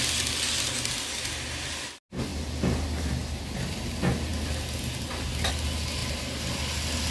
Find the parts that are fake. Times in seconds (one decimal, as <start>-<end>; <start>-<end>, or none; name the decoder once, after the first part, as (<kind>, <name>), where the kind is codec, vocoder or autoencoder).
none